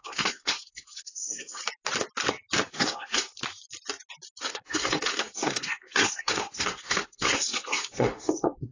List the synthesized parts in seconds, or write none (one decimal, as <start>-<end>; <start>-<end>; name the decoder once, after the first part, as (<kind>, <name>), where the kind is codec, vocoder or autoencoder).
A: 0.0-1.6 (codec, SNAC); 2.7-3.4; 4.4-8.7

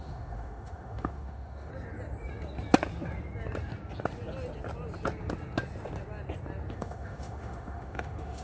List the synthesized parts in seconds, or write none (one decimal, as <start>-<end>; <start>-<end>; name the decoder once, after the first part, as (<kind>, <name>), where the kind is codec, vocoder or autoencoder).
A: 0.0-1.7 (autoencoder, DAC-VAE); 6.7-8.4